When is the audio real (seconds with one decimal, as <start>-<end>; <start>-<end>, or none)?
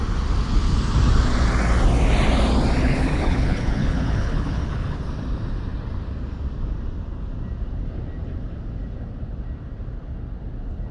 0.0-2.8; 5.0-10.9